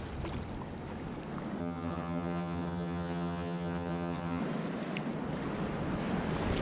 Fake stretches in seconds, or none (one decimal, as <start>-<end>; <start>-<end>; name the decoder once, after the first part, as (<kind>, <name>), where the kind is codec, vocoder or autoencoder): 1.6-4.4 (vocoder, HiFi-GAN)